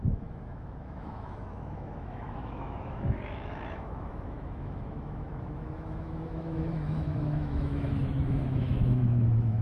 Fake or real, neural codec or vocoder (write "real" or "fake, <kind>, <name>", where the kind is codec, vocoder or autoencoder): fake, autoencoder, DAC-VAE